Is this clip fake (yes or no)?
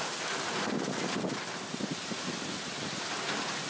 no